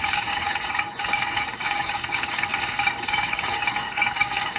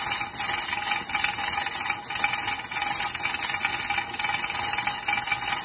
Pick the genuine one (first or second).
second